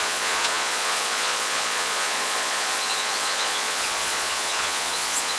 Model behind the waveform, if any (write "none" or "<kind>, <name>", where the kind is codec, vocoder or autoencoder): vocoder, Vocos